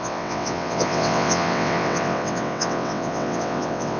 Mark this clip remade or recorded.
remade